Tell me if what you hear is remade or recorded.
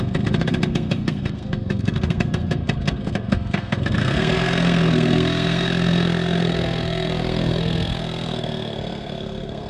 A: remade